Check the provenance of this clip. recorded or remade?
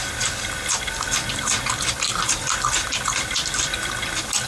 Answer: remade